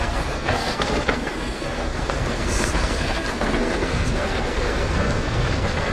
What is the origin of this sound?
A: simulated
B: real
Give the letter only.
A